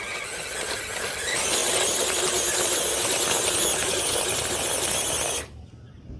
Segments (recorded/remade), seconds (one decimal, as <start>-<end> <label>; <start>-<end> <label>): 0.0-6.2 recorded